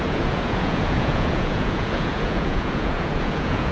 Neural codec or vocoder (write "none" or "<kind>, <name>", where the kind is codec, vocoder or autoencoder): vocoder, Vocos